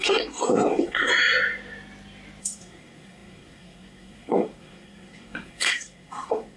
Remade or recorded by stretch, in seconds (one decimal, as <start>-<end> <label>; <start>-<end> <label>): 0.0-1.1 remade; 1.1-2.4 recorded; 2.4-6.6 remade